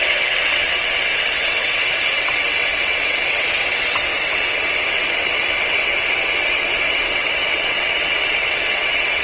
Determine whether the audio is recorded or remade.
remade